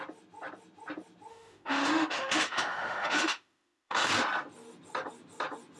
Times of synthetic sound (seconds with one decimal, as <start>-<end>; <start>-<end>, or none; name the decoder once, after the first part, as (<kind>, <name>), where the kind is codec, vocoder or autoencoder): 1.3-4.1 (autoencoder, DAC-VAE)